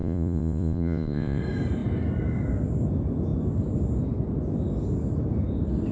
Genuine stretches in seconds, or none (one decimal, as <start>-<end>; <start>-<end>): 1.4-5.9